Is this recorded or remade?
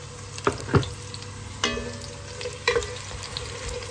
recorded